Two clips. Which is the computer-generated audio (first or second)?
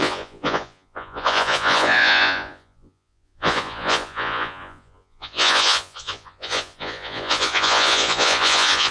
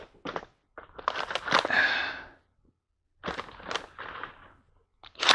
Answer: first